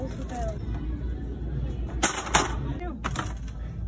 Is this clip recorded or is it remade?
recorded